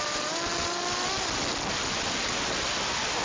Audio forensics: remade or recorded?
recorded